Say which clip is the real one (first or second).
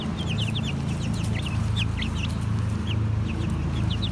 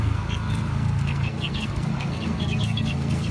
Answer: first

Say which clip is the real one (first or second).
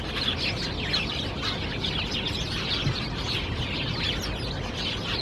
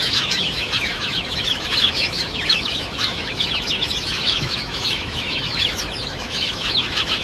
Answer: first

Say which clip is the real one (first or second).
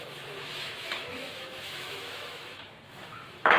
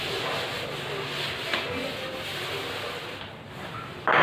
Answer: second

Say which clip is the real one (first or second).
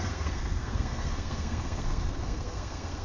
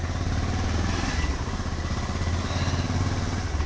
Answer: second